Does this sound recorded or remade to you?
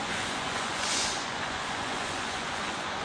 remade